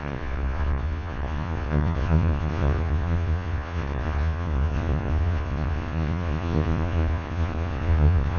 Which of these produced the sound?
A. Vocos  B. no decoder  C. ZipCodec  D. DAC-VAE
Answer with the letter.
A